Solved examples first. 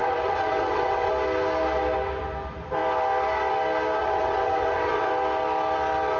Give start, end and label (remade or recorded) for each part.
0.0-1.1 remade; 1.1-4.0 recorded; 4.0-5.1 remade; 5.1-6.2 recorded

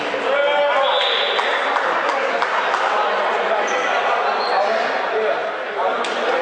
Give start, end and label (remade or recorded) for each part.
0.0-6.4 recorded

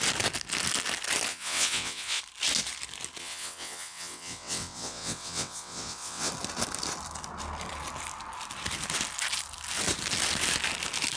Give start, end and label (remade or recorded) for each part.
0.0-1.3 recorded; 1.3-2.2 remade; 2.2-3.2 recorded; 3.2-6.3 remade; 6.3-11.2 recorded

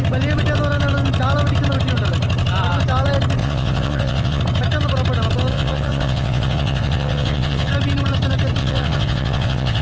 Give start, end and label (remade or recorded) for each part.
0.0-3.4 recorded; 3.4-4.4 remade; 4.4-5.5 recorded; 5.5-7.7 remade; 7.7-8.6 recorded; 8.6-9.8 remade

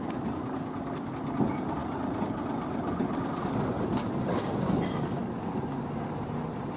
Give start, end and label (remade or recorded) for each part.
0.0-6.8 recorded

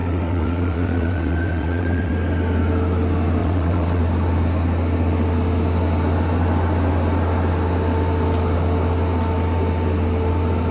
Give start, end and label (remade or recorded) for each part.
0.0-2.1 remade; 2.1-3.4 recorded; 3.4-4.0 remade; 4.0-10.7 recorded

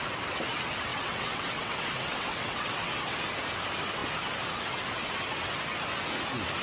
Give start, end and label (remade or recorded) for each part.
0.0-0.9 recorded; 0.9-2.9 remade; 2.9-6.6 recorded